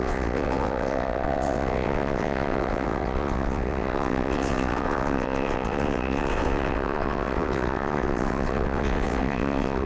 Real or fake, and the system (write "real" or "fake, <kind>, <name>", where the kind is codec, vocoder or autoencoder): fake, vocoder, WaveNeXt